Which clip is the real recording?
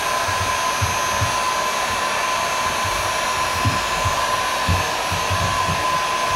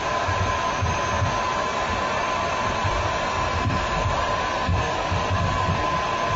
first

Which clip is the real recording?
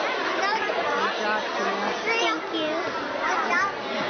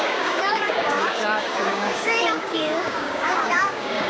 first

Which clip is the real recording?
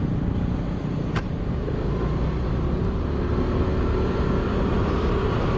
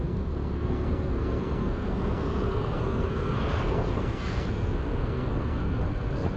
first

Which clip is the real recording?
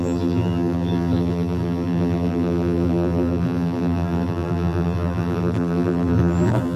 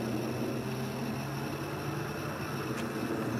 second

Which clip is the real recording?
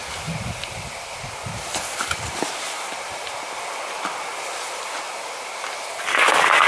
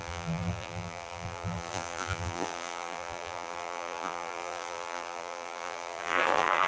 first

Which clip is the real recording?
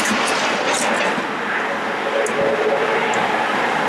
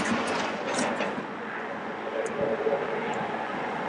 first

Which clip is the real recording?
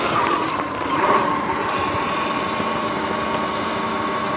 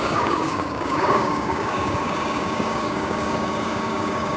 first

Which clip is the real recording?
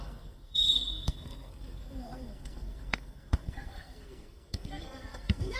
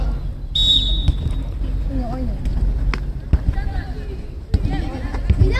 second